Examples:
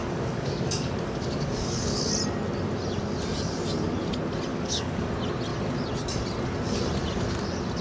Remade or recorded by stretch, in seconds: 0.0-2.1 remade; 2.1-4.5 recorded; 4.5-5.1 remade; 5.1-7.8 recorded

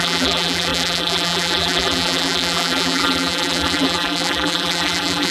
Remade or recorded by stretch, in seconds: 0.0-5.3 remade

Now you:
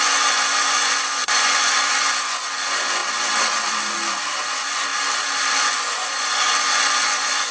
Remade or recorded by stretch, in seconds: 0.0-3.0 remade; 3.0-4.5 recorded; 4.5-4.9 remade; 4.9-5.6 recorded; 5.6-7.5 remade

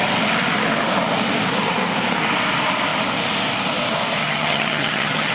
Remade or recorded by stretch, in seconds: 0.0-4.2 recorded; 4.2-5.3 remade

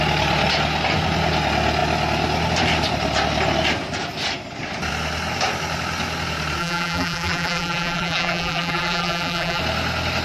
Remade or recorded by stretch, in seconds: 0.0-6.6 recorded; 6.6-9.6 remade; 9.6-10.2 recorded

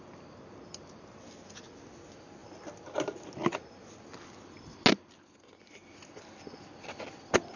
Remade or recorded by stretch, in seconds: 0.0-7.6 recorded

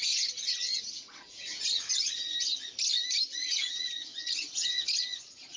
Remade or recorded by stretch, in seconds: 0.0-2.3 remade; 2.3-3.3 recorded; 3.3-5.6 remade

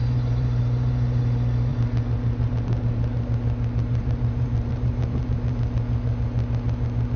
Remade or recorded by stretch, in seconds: 0.0-1.2 remade; 1.2-3.9 recorded; 3.9-5.6 remade; 5.6-7.2 recorded